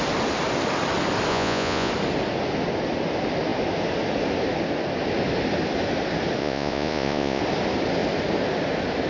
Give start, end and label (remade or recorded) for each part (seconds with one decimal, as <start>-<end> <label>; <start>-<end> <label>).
0.0-1.3 recorded; 1.3-1.9 remade; 1.9-6.4 recorded; 6.4-7.4 remade; 7.4-9.1 recorded